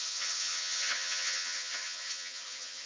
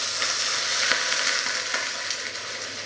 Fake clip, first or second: first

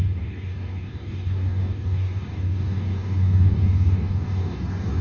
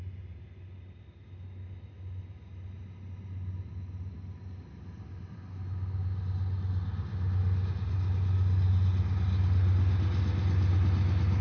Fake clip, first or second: first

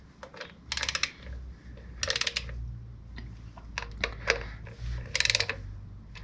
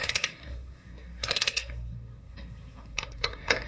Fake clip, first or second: second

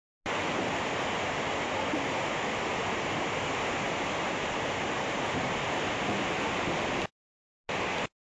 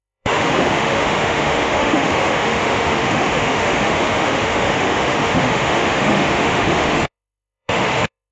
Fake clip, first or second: second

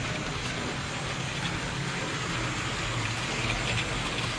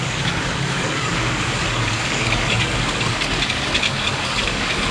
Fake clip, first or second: second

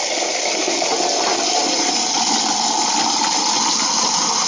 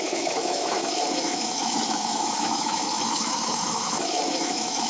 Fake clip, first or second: second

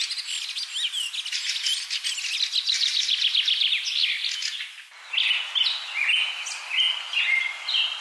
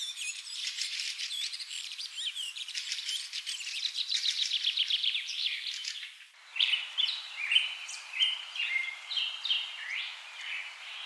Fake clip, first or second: second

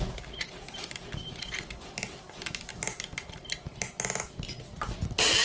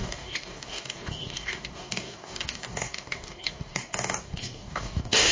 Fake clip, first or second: second